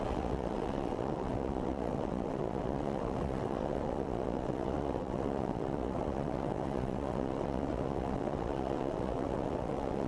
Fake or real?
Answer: fake